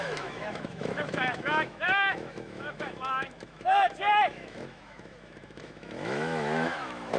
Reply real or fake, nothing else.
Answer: fake